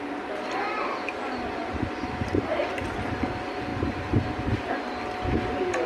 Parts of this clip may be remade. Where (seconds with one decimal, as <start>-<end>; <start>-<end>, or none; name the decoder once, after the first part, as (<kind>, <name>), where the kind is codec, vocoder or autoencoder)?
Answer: 1.7-2.4 (vocoder, BigVGAN v2); 3.7-4.8